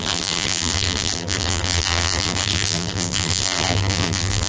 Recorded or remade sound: remade